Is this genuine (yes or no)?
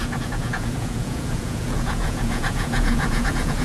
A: no